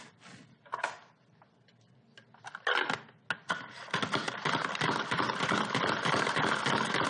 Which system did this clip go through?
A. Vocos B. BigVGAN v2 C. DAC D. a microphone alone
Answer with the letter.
D